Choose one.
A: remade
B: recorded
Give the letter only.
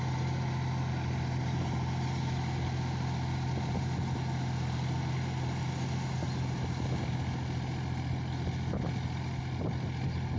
B